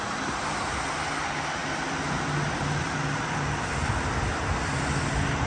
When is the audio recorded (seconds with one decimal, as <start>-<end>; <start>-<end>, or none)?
0.0-5.5